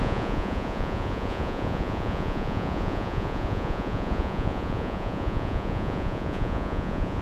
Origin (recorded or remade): remade